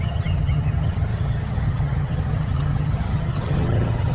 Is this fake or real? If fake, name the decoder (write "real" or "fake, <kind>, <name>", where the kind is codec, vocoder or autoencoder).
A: fake, vocoder, HiFi-GAN